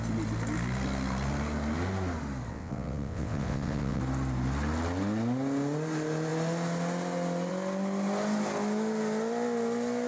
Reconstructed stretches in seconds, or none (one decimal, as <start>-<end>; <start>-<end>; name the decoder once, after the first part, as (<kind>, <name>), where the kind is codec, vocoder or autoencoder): 2.5-4.0 (vocoder, WaveNeXt)